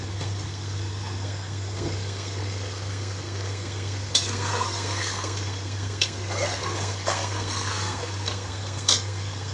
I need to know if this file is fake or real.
fake